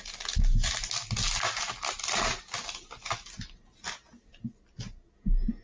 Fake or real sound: real